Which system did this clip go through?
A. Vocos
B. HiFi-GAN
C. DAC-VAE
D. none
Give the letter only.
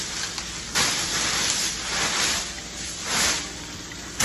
D